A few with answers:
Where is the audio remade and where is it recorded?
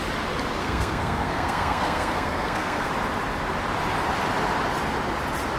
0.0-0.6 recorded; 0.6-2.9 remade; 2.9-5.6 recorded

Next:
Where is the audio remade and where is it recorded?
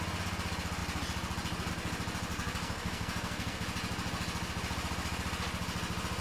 0.0-2.3 recorded; 2.3-3.6 remade; 3.6-6.2 recorded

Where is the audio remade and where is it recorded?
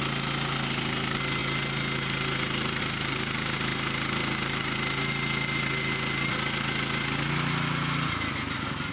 0.0-8.9 recorded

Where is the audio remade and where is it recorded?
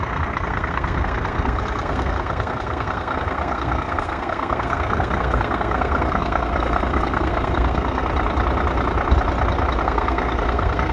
0.0-8.0 remade; 8.0-9.8 recorded; 9.8-10.9 remade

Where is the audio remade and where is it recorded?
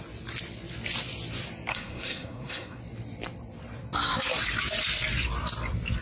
0.0-1.7 recorded; 1.7-2.8 remade; 2.8-6.0 recorded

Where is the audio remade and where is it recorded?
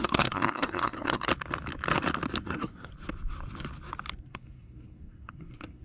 0.0-1.3 remade; 1.3-2.4 recorded; 2.4-2.9 remade; 2.9-4.1 recorded; 4.1-5.8 remade